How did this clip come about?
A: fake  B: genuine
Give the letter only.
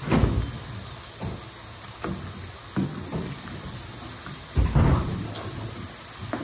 B